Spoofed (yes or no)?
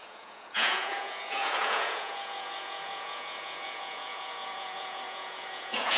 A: yes